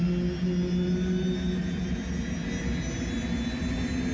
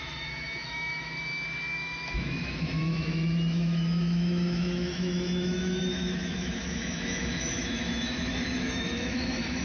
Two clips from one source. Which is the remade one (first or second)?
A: second